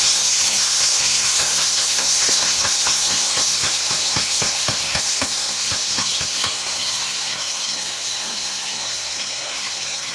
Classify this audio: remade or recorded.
remade